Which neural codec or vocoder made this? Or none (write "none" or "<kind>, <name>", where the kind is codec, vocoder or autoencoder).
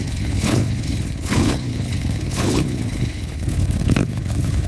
codec, HILCodec